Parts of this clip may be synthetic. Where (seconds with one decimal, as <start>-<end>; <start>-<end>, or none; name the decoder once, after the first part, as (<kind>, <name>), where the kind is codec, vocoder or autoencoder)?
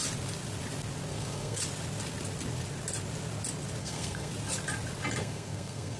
1.1-1.6 (codec, SNAC); 3.8-4.3; 5.2-6.0